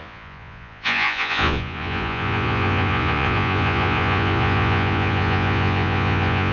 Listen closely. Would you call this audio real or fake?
fake